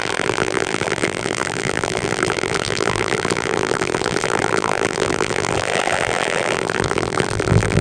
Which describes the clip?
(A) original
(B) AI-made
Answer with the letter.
B